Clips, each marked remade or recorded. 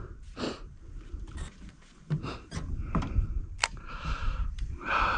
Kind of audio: remade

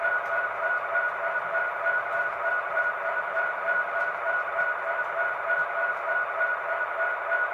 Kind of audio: remade